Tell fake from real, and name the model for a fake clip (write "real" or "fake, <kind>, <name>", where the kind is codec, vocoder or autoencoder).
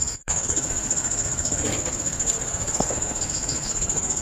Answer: fake, codec, SNAC